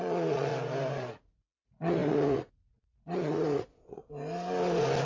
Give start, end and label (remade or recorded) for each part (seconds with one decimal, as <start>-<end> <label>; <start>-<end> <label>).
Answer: 0.0-0.5 remade; 0.5-1.2 recorded; 1.2-4.0 remade; 4.0-5.0 recorded